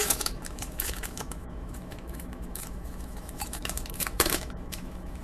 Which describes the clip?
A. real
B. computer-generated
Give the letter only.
B